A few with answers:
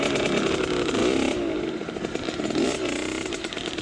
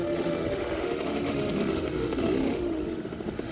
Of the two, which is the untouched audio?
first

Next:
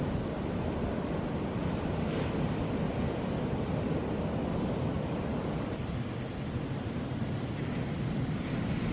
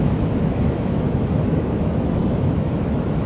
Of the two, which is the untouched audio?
first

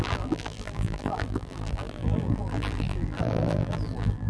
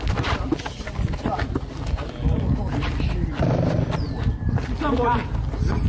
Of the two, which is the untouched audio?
second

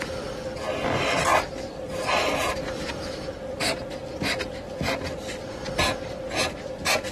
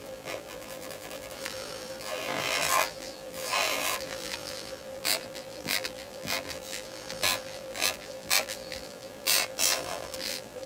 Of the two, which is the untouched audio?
first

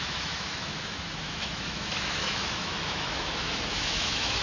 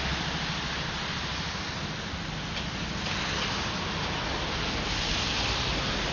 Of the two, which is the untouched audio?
second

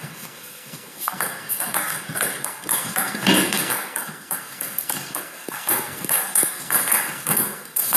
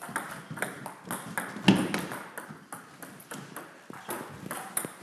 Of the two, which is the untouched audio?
second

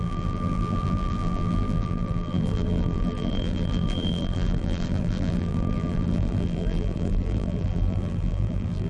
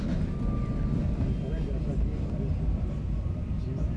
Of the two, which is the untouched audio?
second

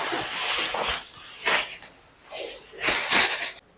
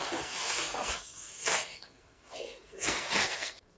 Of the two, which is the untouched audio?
first